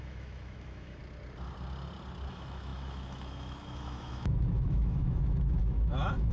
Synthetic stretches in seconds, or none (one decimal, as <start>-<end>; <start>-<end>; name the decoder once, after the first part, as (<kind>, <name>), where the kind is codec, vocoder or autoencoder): 0.0-1.0 (autoencoder, DAC-VAE); 2.3-6.3